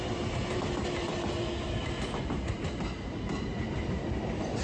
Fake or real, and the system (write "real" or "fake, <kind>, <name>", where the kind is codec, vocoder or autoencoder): real